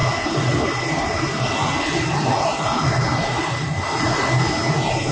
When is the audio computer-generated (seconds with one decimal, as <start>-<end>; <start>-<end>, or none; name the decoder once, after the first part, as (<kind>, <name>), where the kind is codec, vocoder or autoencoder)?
none